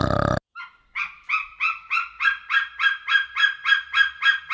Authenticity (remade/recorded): recorded